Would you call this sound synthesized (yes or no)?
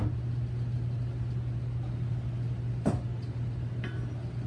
no